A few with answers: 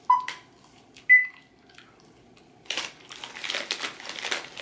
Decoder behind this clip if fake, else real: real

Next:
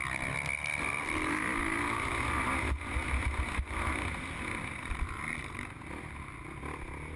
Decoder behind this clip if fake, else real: real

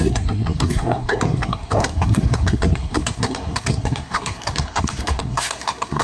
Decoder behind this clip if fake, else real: fake, codec, SNAC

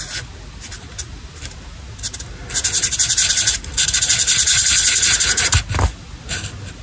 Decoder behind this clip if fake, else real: real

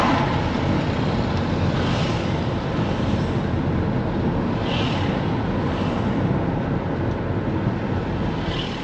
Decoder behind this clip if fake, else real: real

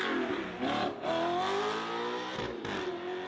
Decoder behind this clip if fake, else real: real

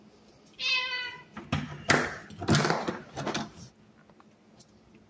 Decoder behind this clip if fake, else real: real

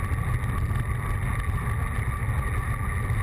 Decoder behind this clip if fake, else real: real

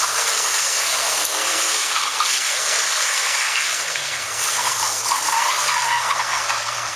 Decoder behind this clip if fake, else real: fake, codec, SNAC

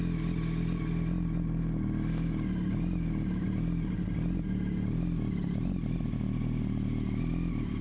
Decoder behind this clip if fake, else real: real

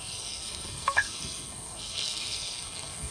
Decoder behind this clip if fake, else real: fake, codec, SNAC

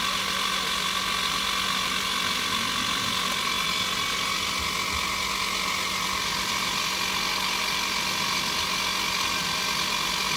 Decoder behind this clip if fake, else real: real